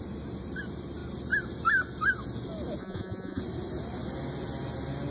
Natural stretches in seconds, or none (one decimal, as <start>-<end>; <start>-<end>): 0.0-2.8; 3.4-5.1

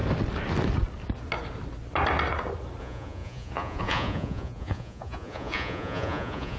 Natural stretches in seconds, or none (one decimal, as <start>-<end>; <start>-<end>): 0.0-2.8

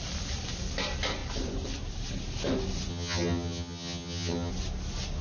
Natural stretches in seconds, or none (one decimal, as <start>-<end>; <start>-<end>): 0.0-2.9; 4.5-5.2

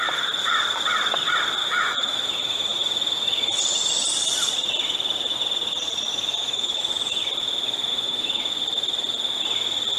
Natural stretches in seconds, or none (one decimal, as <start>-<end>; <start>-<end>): 0.0-1.6; 3.6-6.4; 6.9-7.9; 8.5-10.0